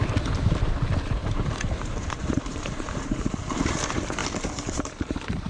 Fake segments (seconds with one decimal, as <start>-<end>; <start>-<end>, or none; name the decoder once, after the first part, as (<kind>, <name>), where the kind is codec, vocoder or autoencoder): 0.0-5.5 (vocoder, BigVGAN v2)